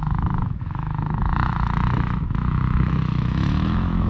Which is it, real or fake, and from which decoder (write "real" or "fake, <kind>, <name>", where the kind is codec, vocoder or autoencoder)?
fake, autoencoder, DAC-VAE